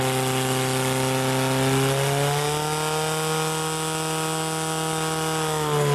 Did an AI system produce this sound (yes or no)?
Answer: no